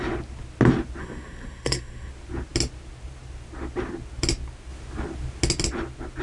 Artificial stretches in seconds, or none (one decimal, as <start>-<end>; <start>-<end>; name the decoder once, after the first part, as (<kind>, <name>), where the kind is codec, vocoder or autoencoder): 1.0-2.1 (codec, SNAC)